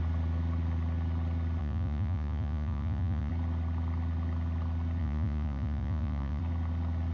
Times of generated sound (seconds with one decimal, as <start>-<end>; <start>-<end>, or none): 1.6-3.3; 5.0-6.4